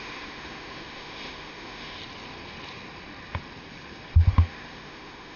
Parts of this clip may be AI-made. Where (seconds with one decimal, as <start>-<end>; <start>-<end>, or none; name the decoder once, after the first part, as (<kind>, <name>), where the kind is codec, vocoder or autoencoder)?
0.0-2.0 (autoencoder, DAC-VAE); 4.3-5.4